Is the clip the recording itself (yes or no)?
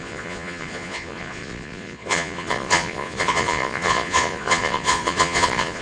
no